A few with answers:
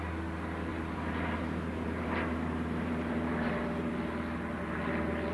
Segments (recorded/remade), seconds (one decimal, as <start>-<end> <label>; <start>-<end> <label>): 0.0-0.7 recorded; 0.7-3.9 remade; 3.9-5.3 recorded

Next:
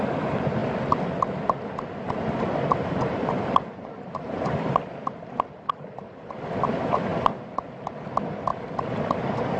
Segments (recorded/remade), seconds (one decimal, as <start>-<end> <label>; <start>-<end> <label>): 0.0-9.6 recorded

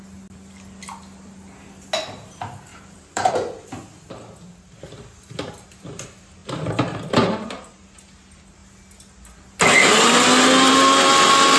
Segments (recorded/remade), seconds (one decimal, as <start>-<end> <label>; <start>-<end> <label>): 0.0-2.7 recorded; 2.7-3.3 remade; 3.3-6.4 recorded; 6.4-7.4 remade; 7.4-11.6 recorded

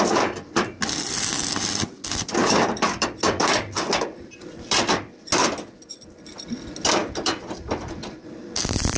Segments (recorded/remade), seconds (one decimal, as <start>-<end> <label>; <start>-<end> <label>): 0.0-2.4 recorded; 2.4-4.8 remade; 4.8-7.0 recorded; 7.0-8.4 remade; 8.4-9.0 recorded

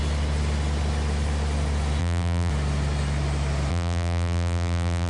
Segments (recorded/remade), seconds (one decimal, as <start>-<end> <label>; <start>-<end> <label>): 0.0-2.0 recorded; 2.0-2.5 remade; 2.5-3.7 recorded; 3.7-5.1 remade

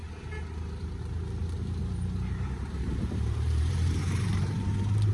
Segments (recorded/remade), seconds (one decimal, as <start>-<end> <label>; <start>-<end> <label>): 0.0-1.8 recorded; 1.8-5.1 remade

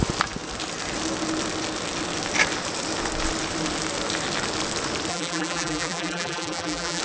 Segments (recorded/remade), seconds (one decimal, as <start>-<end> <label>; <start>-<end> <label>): 0.0-5.1 recorded; 5.1-7.0 remade